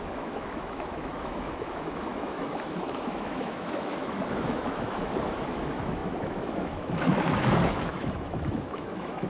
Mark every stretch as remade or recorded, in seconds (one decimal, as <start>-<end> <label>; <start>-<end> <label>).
0.0-9.3 remade